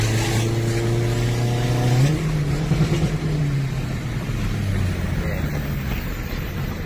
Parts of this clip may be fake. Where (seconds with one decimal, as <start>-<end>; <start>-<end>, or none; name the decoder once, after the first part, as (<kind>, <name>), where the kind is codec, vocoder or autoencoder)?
none